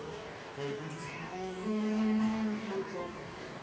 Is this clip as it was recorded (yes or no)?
no